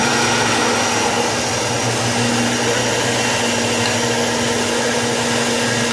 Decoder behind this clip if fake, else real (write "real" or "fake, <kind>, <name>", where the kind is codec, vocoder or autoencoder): real